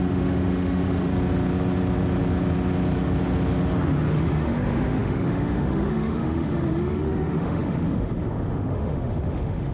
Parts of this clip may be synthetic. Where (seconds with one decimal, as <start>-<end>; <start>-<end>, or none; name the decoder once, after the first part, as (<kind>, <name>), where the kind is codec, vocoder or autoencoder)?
0.0-1.1 (autoencoder, DAC-VAE); 4.1-9.7